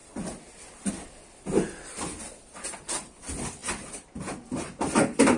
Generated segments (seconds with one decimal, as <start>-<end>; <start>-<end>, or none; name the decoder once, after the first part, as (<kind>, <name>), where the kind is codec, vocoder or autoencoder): 0.9-5.4 (vocoder, BigVGAN v2)

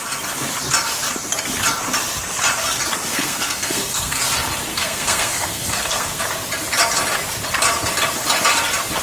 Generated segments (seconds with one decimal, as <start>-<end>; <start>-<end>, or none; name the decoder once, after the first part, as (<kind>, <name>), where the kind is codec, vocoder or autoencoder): 3.1-4.2 (codec, SNAC); 4.7-6.2

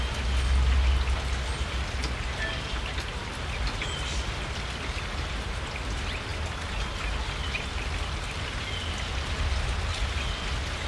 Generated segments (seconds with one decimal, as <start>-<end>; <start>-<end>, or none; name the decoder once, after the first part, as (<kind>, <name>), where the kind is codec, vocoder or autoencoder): none

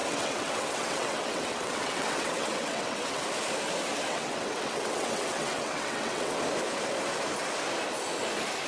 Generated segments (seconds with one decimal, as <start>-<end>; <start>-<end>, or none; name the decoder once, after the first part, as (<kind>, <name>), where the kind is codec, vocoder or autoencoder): 0.0-3.2 (vocoder, WaveNeXt); 4.1-6.4

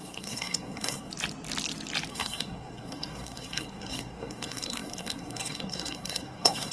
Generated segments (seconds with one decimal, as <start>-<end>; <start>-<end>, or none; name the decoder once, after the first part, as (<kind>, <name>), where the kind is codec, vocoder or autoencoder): 0.0-1.1 (codec, SNAC); 2.1-6.7

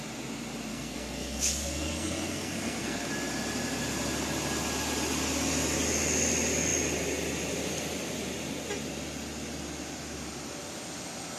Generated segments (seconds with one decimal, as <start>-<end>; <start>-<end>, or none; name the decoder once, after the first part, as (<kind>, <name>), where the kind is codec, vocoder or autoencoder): 0.7-3.1 (codec, SNAC)

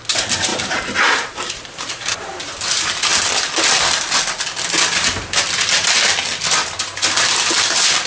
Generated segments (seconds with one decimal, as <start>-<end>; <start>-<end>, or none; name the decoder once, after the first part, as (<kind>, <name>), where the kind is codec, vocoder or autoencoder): 0.5-2.4 (vocoder, BigVGAN v2)

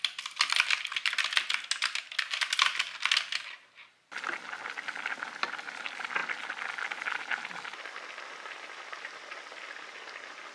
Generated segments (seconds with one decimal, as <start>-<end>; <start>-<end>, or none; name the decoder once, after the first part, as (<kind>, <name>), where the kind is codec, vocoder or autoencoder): none